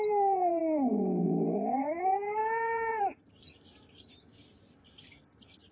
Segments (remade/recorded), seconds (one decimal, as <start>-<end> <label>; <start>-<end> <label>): 0.0-0.6 remade; 0.6-1.8 recorded; 1.8-5.7 remade